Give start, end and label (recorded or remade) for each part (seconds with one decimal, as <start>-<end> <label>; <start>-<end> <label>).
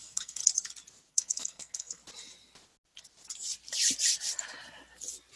0.0-0.4 remade; 0.4-1.1 recorded; 1.1-2.0 remade; 2.0-5.4 recorded